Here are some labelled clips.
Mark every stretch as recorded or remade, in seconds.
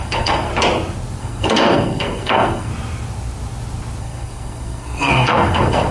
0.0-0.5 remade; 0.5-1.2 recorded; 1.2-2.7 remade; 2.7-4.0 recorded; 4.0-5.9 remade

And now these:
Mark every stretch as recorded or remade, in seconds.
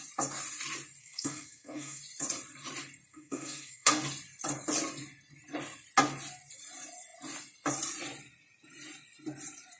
0.0-1.0 recorded; 1.0-2.0 remade; 2.0-3.1 recorded; 3.1-3.9 remade; 3.9-9.8 recorded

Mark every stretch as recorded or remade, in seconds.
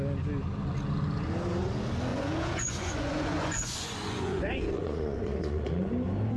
0.0-2.1 recorded; 2.1-5.9 remade; 5.9-6.4 recorded